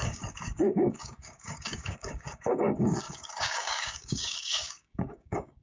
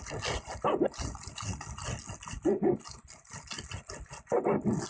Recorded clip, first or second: second